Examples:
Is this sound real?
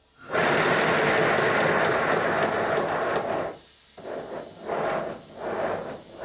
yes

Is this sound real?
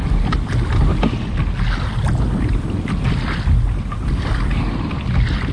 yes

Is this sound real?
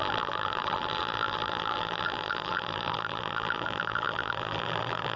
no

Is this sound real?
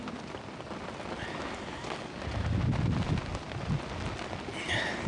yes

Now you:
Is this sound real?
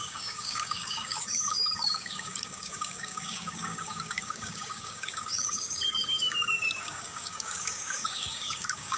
no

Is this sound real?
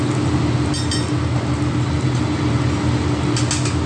yes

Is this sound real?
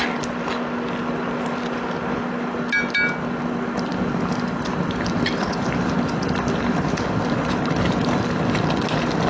yes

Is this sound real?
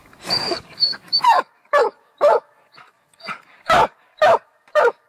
no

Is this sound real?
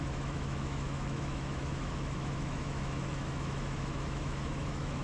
no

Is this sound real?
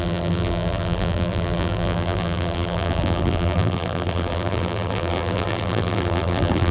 no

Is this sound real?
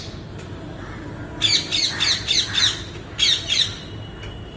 yes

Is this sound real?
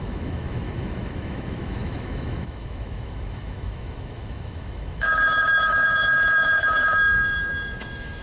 no